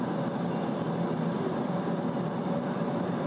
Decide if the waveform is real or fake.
real